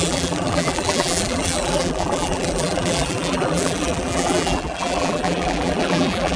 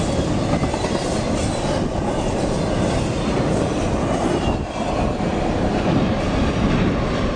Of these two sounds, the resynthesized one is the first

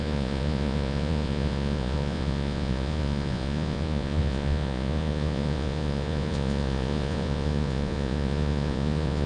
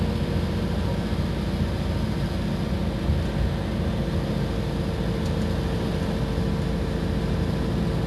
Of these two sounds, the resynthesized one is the first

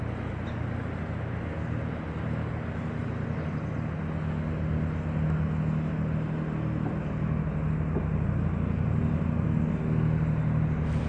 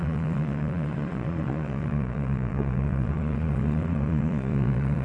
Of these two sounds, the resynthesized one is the second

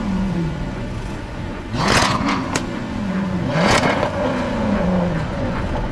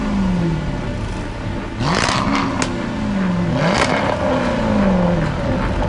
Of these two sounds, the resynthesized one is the first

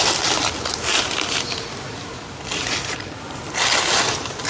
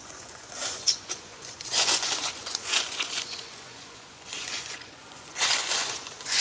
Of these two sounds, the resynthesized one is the second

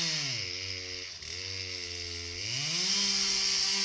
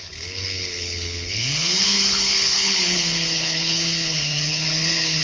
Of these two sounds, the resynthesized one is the second